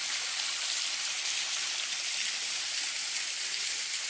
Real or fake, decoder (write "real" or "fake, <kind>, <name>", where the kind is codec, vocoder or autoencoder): fake, vocoder, BigVGAN v2